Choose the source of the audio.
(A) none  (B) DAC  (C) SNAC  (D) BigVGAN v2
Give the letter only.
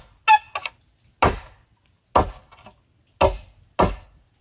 A